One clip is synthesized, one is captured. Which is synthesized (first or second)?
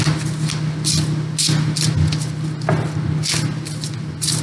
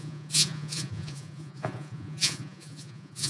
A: second